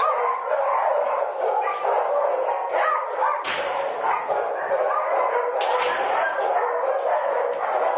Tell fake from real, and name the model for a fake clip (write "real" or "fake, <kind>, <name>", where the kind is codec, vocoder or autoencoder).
real